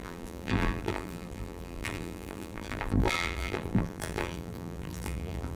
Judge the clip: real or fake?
fake